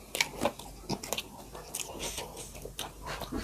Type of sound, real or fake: real